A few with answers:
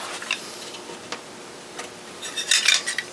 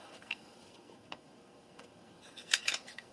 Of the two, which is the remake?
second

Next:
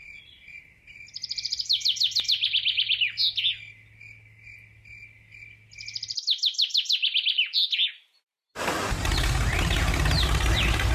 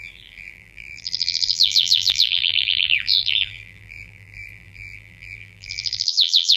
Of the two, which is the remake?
second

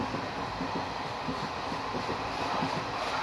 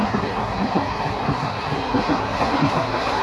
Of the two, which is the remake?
second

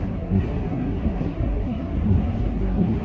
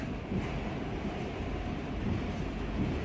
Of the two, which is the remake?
first